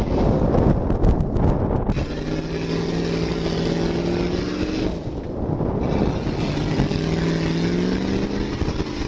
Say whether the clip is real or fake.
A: real